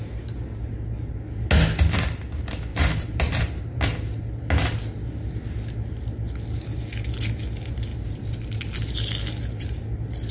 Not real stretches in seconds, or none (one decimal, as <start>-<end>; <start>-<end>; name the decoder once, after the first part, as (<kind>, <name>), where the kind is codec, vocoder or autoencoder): 2.7-3.8 (vocoder, BigVGAN v2); 7.9-8.4